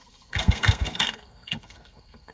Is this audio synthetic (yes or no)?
yes